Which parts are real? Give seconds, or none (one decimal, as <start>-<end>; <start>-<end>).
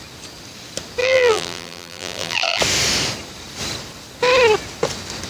0.0-1.0; 2.6-5.3